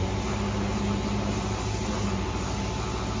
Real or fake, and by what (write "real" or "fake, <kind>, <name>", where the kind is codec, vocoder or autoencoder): real